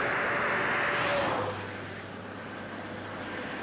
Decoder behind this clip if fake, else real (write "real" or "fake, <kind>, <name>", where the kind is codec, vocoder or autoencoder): real